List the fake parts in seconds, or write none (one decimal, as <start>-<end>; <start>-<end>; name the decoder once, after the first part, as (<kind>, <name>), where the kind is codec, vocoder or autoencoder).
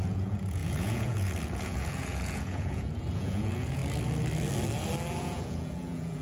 0.0-3.8 (vocoder, Vocos); 5.2-6.2